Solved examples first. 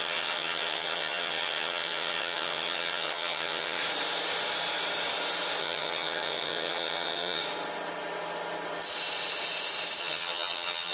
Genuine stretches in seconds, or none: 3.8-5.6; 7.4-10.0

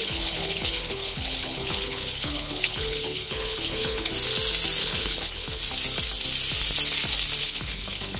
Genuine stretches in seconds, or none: 4.1-4.8; 5.6-7.4